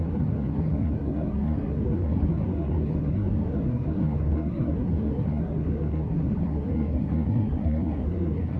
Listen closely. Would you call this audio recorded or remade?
remade